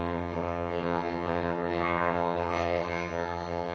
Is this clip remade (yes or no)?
yes